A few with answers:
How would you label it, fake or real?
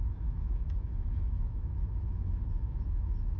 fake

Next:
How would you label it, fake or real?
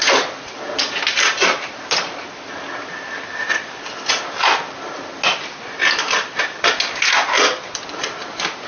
real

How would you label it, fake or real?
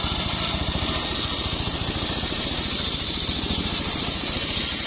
real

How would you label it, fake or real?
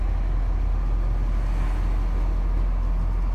real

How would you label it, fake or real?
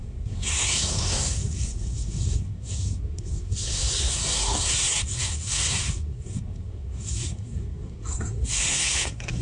fake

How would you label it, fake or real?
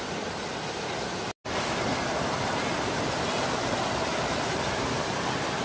real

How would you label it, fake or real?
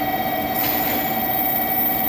real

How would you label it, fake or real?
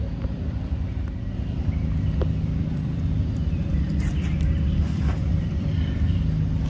fake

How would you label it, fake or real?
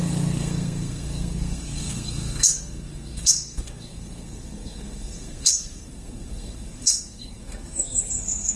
fake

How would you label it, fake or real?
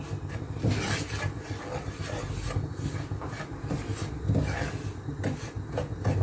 real